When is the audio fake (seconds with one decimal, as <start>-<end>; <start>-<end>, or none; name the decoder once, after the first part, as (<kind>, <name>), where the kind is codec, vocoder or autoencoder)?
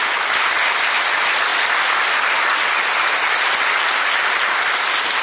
none